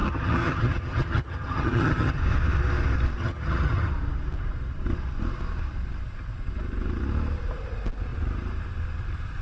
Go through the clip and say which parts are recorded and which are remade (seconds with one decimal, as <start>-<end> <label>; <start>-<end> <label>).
0.0-2.2 remade; 2.2-3.2 recorded; 3.2-3.9 remade; 3.9-9.4 recorded